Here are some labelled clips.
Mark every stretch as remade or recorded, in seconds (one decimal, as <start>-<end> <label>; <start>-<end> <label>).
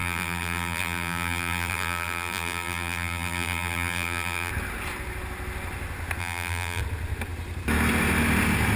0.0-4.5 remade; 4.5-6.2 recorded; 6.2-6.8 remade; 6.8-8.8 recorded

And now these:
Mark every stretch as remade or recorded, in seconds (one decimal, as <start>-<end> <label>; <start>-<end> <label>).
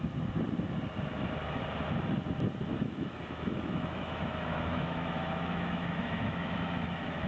0.0-2.8 recorded; 2.8-7.3 remade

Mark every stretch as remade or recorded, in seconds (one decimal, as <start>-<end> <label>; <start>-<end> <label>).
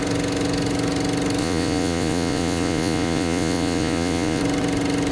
0.0-1.4 recorded; 1.4-4.4 remade; 4.4-5.1 recorded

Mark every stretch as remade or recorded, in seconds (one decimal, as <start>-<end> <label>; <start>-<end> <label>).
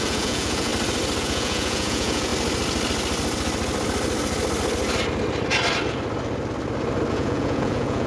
0.0-0.7 remade; 0.7-1.2 recorded; 1.2-2.3 remade; 2.3-7.1 recorded; 7.1-8.1 remade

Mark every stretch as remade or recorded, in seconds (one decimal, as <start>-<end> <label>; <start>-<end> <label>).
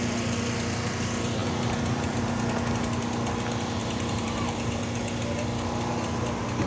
0.0-1.4 recorded; 1.4-2.2 remade; 2.2-3.8 recorded; 3.8-4.8 remade; 4.8-6.7 recorded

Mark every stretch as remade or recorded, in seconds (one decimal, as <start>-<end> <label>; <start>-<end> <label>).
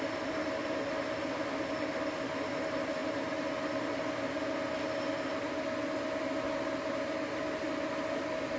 0.0-8.6 recorded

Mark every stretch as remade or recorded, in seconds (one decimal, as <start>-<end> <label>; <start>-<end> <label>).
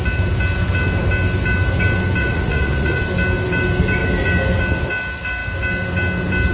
0.0-2.2 recorded; 2.2-3.0 remade; 3.0-6.5 recorded